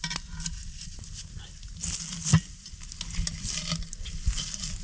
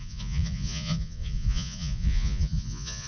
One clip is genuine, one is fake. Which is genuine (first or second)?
first